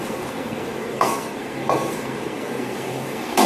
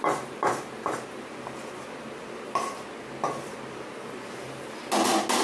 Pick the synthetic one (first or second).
first